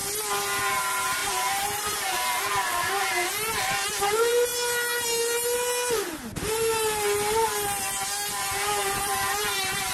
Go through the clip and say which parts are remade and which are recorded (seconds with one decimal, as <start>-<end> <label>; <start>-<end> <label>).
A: 0.0-0.6 recorded; 0.6-4.5 remade; 4.5-8.5 recorded; 8.5-9.9 remade